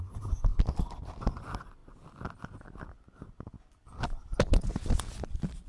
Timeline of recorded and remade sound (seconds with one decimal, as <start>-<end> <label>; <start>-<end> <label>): 0.0-5.7 recorded